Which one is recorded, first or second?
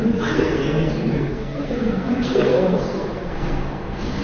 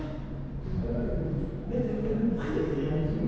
second